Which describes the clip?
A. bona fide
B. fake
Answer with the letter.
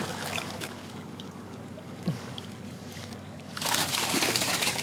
B